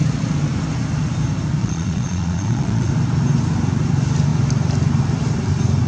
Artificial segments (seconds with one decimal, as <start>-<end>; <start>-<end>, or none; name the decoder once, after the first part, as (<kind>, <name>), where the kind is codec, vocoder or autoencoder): 1.6-2.9 (vocoder, Vocos)